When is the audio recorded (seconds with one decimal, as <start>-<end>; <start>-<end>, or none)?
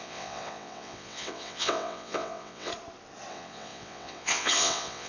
2.7-3.3